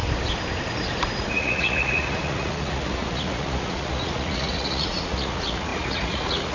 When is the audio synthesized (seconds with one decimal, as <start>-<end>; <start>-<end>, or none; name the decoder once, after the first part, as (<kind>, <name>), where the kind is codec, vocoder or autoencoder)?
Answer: 1.3-6.5 (vocoder, Vocos)